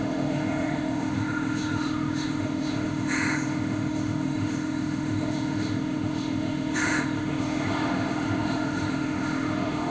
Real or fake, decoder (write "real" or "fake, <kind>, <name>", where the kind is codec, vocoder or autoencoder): fake, autoencoder, DAC-VAE